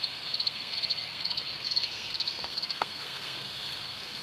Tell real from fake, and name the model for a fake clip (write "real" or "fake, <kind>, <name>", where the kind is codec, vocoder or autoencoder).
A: fake, codec, SNAC